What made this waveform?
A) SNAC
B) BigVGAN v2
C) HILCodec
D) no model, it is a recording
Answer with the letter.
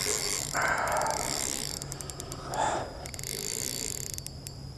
D